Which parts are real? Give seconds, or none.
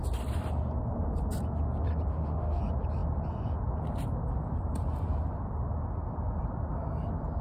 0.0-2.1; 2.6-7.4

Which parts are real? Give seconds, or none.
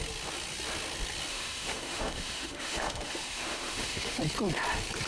0.0-1.3; 4.2-5.1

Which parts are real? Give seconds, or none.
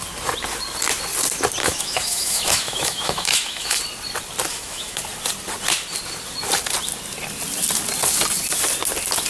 0.0-1.6; 3.8-4.5; 5.0-9.3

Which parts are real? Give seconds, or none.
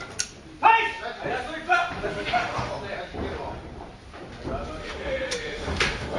0.0-2.1; 2.7-4.8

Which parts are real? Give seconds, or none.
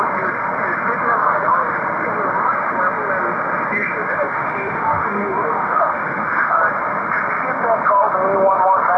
0.0-1.2; 1.8-4.1; 6.6-9.0